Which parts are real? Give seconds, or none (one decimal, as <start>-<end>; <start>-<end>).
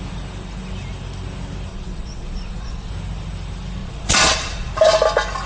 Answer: 0.0-1.7; 2.9-3.8; 4.7-5.5